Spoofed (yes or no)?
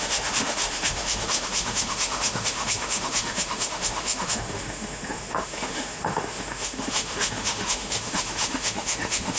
yes